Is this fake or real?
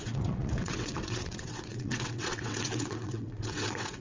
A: fake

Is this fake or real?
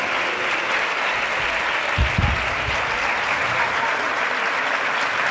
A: real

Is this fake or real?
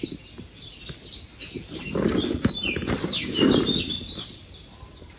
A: real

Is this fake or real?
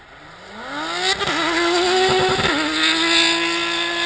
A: real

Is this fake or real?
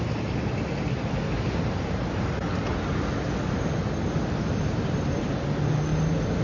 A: real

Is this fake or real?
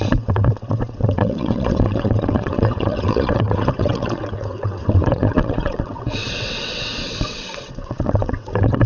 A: fake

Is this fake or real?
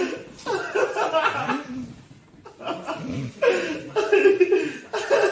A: real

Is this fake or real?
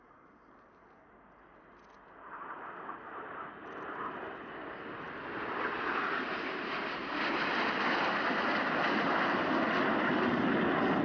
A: real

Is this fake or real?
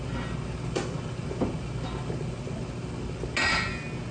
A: real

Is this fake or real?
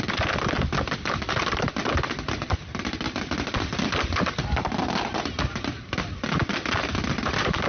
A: real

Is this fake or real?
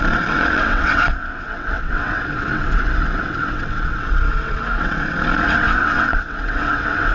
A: fake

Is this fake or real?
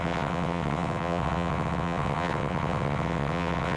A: fake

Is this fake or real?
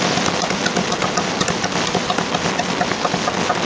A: real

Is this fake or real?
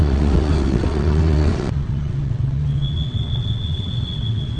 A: fake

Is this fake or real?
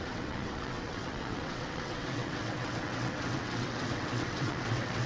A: fake